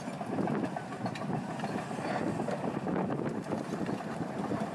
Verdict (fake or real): fake